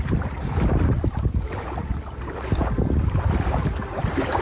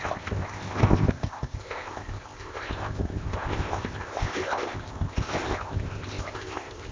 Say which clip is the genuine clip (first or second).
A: first